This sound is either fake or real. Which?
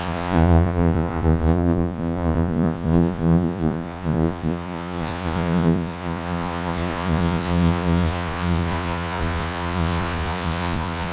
fake